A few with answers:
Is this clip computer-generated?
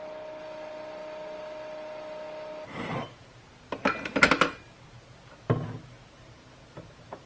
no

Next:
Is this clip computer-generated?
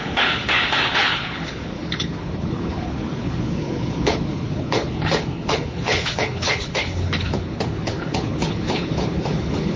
yes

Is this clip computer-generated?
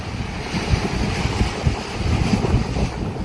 no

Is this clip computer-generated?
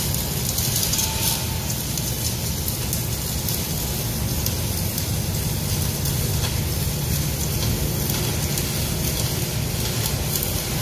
no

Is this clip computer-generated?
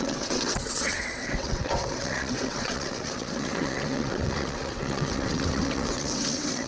yes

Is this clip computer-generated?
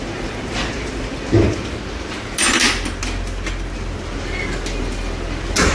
no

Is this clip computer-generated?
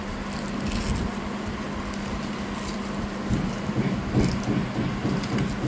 no